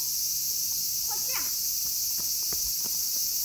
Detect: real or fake real